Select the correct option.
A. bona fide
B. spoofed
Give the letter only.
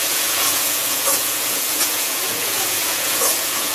B